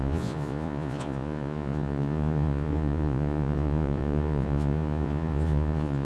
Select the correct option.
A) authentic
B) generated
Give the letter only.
B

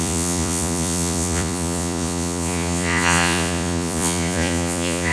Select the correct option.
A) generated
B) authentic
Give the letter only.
A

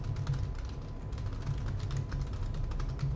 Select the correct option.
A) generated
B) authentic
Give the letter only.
B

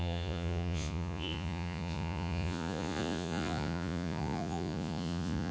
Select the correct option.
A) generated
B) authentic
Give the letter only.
A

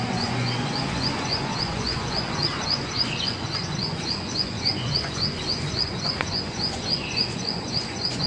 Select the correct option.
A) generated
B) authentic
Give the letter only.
A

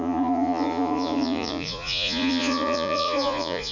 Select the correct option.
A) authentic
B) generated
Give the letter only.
B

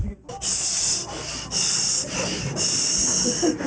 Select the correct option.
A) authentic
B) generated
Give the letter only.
A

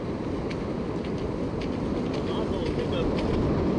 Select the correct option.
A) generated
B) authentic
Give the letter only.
B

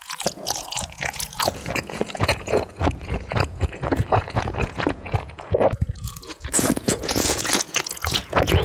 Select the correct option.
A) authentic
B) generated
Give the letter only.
B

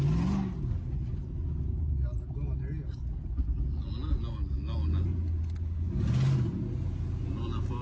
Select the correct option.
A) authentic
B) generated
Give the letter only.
A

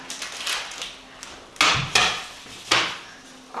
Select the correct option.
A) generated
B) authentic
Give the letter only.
B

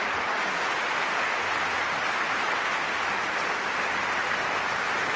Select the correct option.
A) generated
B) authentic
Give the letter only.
B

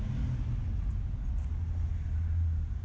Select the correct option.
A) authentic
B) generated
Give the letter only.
A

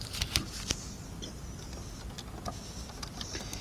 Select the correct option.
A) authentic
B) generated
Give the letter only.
A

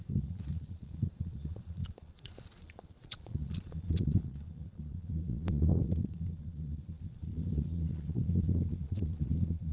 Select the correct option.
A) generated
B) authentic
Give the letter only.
A